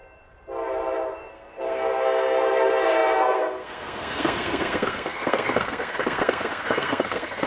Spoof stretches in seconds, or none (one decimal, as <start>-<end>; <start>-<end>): 1.3-7.5